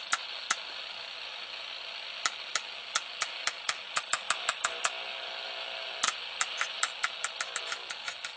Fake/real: real